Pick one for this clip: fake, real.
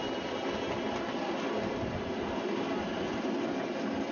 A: real